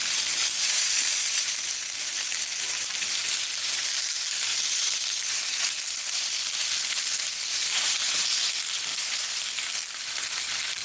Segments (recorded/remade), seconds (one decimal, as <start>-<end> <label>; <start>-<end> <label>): 0.0-3.8 remade; 3.8-7.5 recorded; 7.5-8.5 remade; 8.5-8.9 recorded; 8.9-9.4 remade; 9.4-10.8 recorded